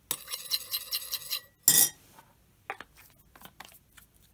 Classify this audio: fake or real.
real